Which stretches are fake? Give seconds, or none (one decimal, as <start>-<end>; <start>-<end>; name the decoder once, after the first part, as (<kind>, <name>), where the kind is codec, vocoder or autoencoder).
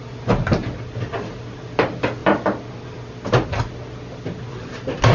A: none